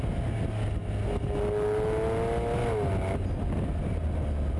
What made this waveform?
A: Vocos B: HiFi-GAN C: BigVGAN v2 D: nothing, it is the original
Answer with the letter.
D